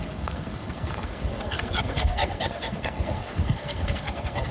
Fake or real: fake